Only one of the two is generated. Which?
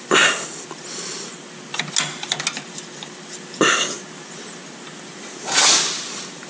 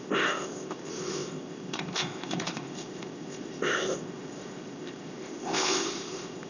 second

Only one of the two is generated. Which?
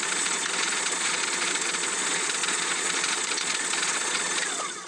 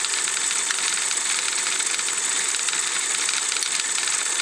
first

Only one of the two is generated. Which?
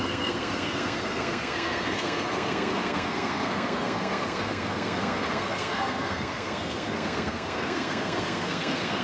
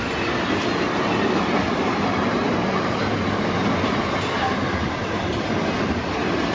first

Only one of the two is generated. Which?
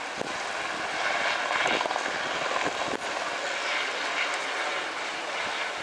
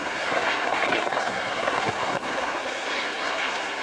second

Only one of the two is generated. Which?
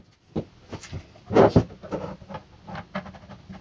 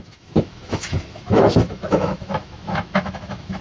second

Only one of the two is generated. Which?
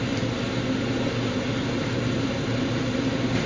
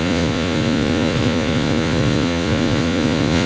second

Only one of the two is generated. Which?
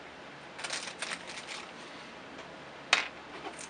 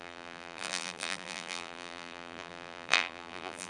second